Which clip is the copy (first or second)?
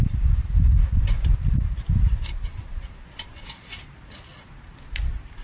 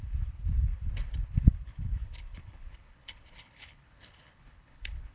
second